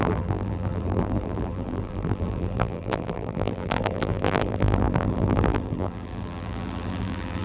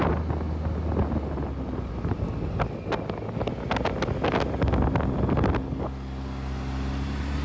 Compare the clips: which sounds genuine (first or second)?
second